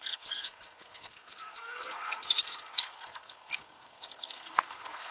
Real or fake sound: fake